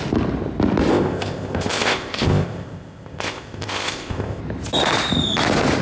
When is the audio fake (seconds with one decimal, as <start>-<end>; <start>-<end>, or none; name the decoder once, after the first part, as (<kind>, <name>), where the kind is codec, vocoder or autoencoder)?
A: 0.9-4.4 (codec, ZipCodec)